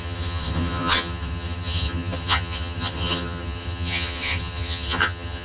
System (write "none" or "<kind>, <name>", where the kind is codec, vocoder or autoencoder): vocoder, HiFi-GAN